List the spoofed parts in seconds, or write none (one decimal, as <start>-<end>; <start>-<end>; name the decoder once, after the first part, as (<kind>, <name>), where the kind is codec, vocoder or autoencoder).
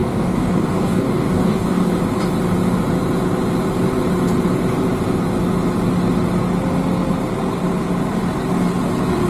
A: 0.0-1.9 (codec, DAC)